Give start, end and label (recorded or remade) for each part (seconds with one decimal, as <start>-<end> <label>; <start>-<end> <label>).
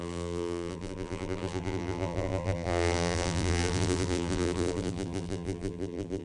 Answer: 0.0-6.2 remade